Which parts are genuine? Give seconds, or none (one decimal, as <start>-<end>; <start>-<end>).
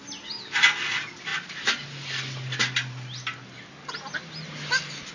0.0-5.1